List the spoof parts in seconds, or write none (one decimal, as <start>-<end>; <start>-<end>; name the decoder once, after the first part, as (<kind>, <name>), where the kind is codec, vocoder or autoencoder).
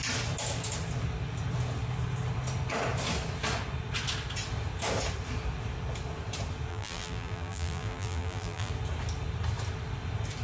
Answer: 6.7-8.7 (vocoder, BigVGAN v2)